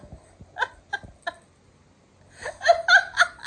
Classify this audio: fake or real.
real